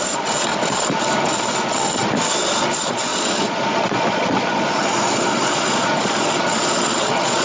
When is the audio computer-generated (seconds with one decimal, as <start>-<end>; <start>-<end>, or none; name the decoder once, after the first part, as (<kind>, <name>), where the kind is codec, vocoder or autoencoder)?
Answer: 0.0-0.5 (vocoder, Vocos); 2.6-7.4